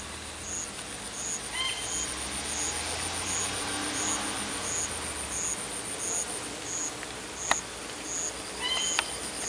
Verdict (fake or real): real